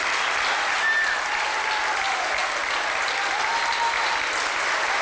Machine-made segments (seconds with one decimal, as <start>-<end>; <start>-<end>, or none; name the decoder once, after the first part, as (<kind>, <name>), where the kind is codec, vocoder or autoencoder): none